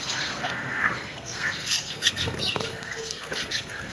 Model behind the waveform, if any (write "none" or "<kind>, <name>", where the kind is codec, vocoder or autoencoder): codec, SNAC